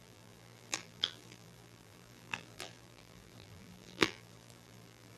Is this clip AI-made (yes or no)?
yes